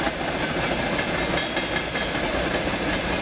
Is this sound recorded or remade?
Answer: recorded